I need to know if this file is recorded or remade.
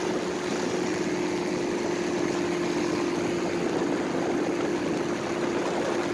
recorded